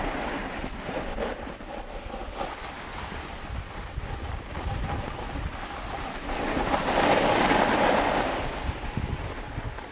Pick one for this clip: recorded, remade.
recorded